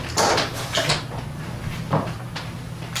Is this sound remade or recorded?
recorded